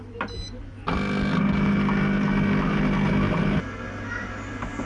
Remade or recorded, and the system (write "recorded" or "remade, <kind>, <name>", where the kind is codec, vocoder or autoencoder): recorded